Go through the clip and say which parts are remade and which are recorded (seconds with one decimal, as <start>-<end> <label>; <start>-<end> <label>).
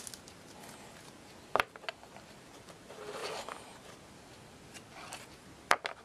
0.0-6.0 recorded